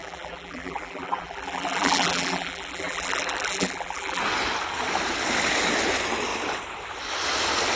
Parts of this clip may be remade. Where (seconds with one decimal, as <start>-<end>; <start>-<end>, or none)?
0.0-4.2